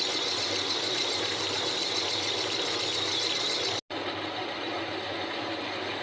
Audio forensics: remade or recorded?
recorded